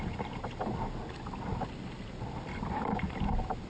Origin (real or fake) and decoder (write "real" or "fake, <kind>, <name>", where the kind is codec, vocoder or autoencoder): real